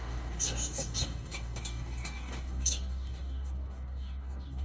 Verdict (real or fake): fake